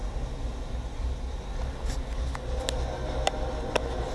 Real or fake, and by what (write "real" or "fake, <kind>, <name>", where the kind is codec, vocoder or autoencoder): real